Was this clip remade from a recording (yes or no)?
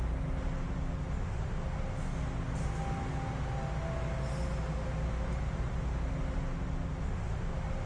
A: no